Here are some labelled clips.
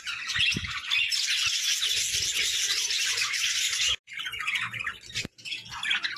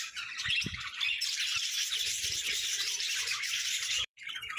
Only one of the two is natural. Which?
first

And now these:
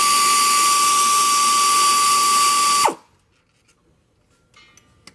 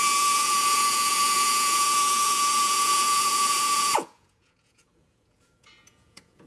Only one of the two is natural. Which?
first